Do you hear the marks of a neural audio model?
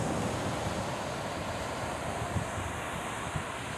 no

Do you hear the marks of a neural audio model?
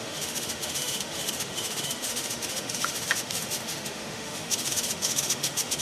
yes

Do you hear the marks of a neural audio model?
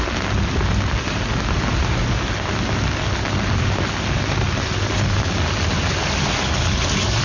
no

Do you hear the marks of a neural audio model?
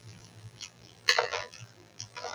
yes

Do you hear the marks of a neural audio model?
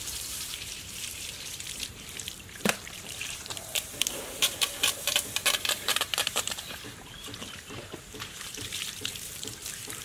yes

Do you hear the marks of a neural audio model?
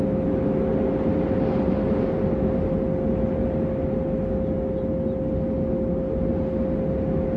no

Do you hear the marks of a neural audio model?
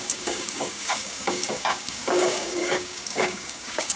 yes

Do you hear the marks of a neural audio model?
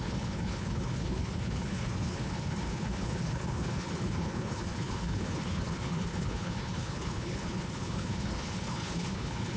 yes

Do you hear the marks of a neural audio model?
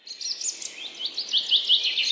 no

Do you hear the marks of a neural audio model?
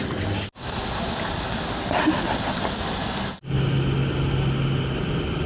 no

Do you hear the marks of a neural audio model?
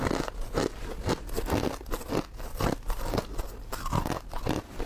no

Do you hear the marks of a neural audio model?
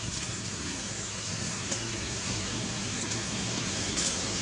yes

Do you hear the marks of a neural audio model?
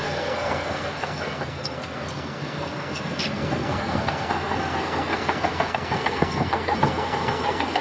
yes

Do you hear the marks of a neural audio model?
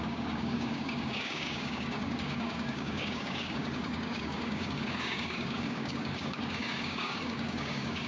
yes